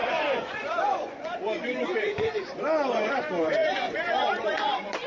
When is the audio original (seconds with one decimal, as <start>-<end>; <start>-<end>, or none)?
none